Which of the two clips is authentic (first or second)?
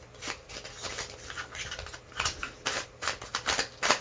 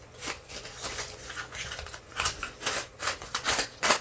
first